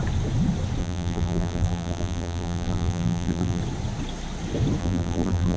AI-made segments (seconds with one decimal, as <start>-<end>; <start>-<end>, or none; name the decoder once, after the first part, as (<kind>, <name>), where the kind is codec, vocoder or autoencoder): 0.8-3.6 (vocoder, BigVGAN v2); 4.8-5.6